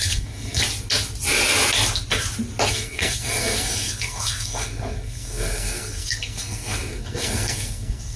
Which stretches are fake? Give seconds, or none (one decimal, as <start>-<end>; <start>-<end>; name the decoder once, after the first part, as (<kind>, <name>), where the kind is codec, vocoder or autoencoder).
0.0-0.6 (codec, SNAC); 2.7-8.2